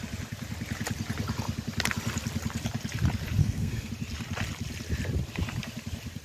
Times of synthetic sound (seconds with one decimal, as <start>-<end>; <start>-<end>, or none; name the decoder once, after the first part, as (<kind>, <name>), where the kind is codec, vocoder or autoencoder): 3.4-3.9 (codec, SNAC)